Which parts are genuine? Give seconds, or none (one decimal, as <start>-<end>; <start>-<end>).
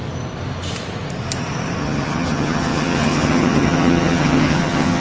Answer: 0.0-1.8